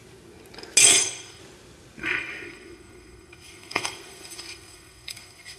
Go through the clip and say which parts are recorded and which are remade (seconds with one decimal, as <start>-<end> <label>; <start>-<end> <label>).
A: 0.0-0.8 recorded; 0.8-1.4 remade; 1.4-2.0 recorded; 2.0-5.6 remade